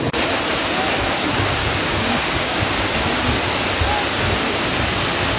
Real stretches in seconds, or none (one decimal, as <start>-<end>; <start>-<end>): 0.0-1.6; 2.8-5.4